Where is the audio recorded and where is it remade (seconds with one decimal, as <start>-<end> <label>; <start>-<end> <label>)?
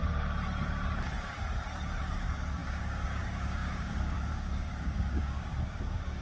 0.0-2.0 recorded; 2.0-6.2 remade